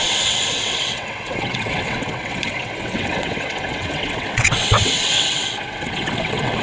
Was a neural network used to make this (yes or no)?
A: yes